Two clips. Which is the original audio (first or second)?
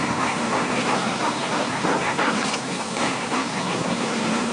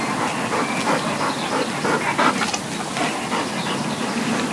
second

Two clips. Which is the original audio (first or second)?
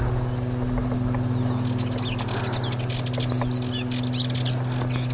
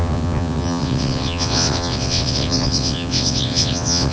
first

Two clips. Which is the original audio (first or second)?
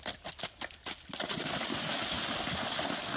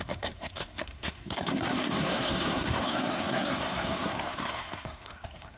first